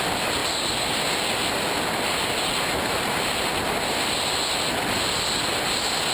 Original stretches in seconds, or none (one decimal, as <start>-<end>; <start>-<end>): 0.0-6.1